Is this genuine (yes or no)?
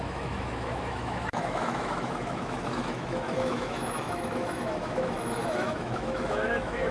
no